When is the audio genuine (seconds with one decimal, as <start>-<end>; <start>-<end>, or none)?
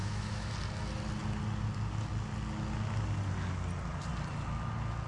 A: 0.5-5.1